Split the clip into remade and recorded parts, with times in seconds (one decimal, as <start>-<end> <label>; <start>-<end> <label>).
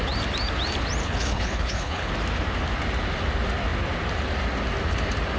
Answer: 0.0-1.0 recorded; 1.0-2.1 remade; 2.1-5.4 recorded